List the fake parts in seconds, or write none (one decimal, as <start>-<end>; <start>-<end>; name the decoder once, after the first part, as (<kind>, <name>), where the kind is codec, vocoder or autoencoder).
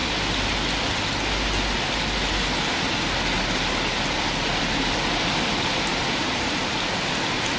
none